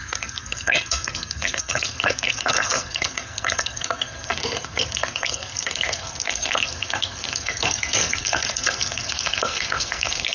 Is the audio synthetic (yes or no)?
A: yes